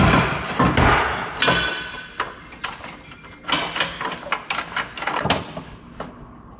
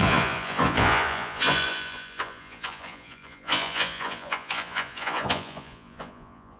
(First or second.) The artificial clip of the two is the second